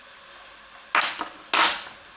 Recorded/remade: recorded